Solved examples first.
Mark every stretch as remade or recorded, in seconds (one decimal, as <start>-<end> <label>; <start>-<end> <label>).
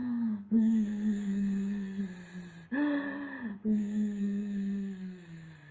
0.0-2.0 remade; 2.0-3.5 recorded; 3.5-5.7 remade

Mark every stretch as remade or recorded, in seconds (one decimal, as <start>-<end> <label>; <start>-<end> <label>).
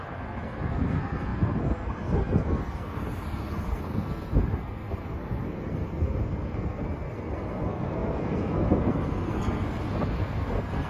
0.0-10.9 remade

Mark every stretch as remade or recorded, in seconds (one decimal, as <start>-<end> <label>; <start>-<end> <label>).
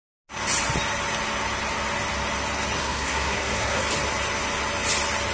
0.0-2.8 recorded; 2.8-3.8 remade; 3.8-5.3 recorded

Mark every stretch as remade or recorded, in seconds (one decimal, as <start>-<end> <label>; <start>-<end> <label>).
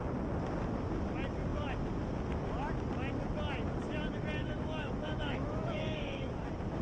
0.0-4.4 recorded; 4.4-6.3 remade; 6.3-6.8 recorded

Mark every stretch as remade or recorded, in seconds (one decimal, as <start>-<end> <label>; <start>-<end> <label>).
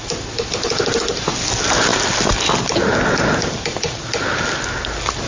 0.0-5.3 recorded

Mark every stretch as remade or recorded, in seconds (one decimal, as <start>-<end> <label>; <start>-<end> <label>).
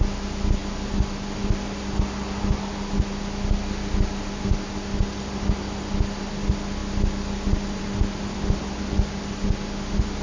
0.0-10.2 recorded